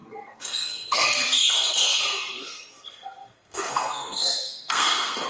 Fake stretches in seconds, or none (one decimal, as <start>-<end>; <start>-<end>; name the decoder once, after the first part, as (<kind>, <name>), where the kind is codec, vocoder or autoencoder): 0.0-5.3 (codec, SNAC)